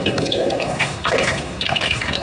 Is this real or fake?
fake